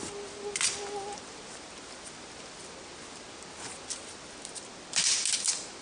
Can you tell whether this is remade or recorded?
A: recorded